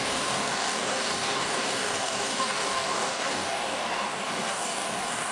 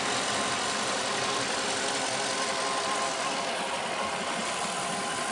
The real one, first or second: second